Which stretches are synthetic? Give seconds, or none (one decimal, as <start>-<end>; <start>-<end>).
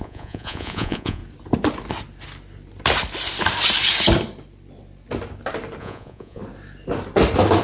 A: 0.0-1.2; 5.8-6.4